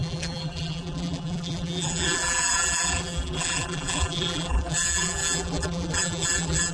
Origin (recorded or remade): remade